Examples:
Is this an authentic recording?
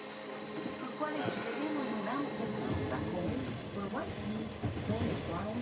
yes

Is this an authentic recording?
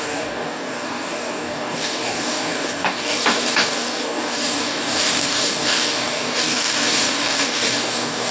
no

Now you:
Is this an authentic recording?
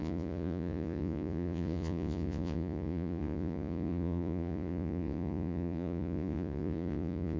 no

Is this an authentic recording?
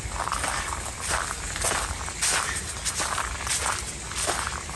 yes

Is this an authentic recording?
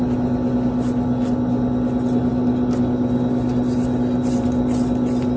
yes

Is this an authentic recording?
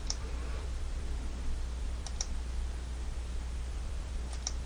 no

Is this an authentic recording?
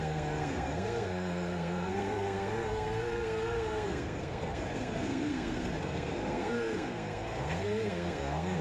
no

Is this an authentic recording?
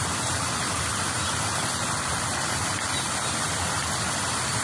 yes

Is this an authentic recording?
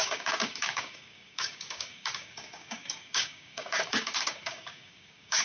no